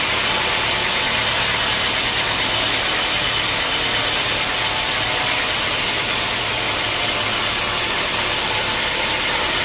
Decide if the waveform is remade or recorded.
recorded